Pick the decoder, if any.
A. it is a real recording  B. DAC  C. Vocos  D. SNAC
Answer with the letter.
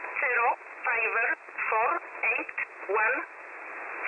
A